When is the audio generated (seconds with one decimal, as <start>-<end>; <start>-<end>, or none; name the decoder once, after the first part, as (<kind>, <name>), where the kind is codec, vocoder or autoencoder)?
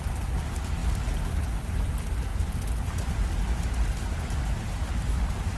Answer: 0.0-0.8 (vocoder, BigVGAN v2); 1.6-2.3; 4.9-5.6